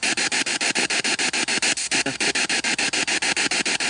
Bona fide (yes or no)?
yes